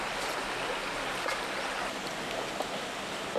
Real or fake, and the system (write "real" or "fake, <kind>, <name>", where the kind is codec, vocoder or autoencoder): real